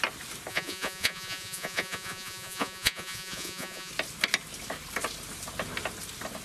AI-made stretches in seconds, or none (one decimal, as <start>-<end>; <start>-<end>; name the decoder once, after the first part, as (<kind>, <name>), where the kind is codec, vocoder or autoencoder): 0.5-3.9 (vocoder, Vocos)